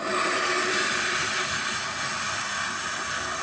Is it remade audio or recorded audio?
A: recorded